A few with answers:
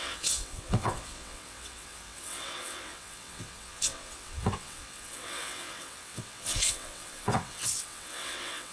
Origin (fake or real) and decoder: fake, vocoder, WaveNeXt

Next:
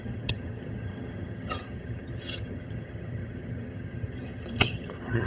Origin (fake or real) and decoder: fake, vocoder, HiFi-GAN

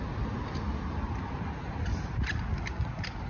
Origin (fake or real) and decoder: real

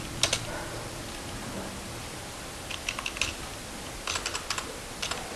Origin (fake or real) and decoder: real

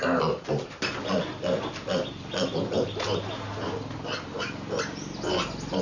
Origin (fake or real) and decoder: real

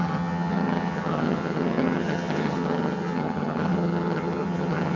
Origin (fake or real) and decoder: fake, vocoder, HiFi-GAN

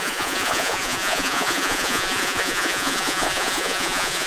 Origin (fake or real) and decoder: fake, vocoder, Vocos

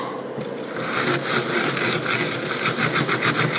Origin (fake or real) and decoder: real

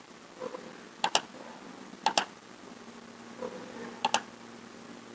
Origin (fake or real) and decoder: real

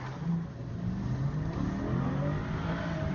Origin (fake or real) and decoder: real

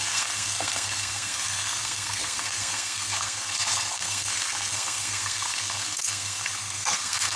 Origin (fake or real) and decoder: fake, codec, SNAC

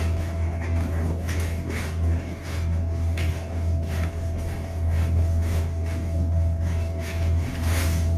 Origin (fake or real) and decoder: fake, codec, DAC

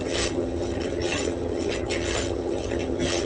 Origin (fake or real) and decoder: fake, vocoder, HiFi-GAN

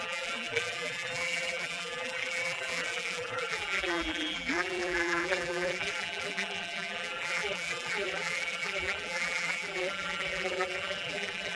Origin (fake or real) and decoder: fake, vocoder, BigVGAN v2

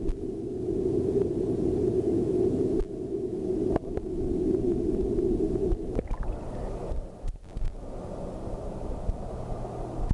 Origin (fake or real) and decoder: real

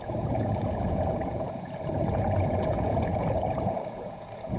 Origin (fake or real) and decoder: fake, vocoder, Vocos